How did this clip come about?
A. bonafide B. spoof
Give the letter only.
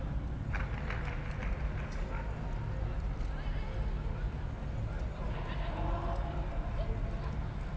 A